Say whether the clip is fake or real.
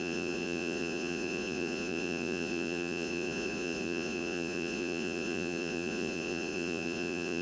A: fake